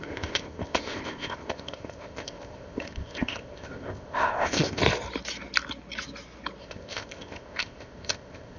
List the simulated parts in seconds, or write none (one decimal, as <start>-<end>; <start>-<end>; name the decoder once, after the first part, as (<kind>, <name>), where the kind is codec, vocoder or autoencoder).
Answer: 0.0-4.8 (codec, ZipCodec); 6.6-8.6